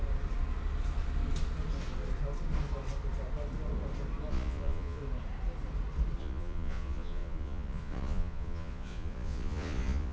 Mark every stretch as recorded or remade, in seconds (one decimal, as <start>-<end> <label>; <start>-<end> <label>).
0.0-4.3 recorded; 4.3-5.0 remade; 5.0-6.2 recorded; 6.2-10.1 remade